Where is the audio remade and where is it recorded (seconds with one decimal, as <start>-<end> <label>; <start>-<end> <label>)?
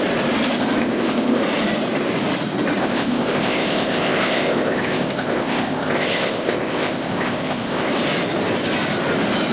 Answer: 0.0-0.8 recorded; 0.8-1.4 remade; 1.4-2.8 recorded; 2.8-7.9 remade; 7.9-9.5 recorded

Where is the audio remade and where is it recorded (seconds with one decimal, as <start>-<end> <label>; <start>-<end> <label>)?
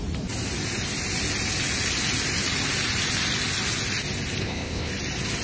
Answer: 0.0-4.4 recorded; 4.4-4.9 remade; 4.9-5.4 recorded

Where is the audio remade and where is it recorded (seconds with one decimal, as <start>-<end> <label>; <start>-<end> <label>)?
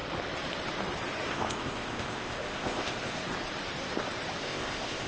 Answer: 0.0-1.3 recorded; 1.3-3.2 remade; 3.2-4.4 recorded; 4.4-5.1 remade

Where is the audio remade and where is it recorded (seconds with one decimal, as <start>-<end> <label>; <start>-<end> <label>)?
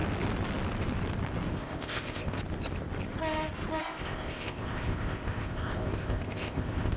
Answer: 0.0-1.5 recorded; 1.5-2.4 remade; 2.4-3.8 recorded; 3.8-7.0 remade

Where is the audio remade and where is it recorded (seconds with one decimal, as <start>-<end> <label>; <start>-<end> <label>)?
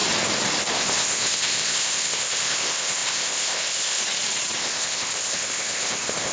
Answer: 0.0-0.7 recorded; 0.7-4.0 remade; 4.0-4.6 recorded; 4.6-6.3 remade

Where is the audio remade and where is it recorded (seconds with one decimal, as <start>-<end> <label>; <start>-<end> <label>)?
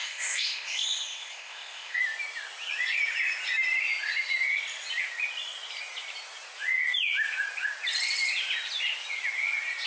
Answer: 0.0-2.0 remade; 2.0-9.9 recorded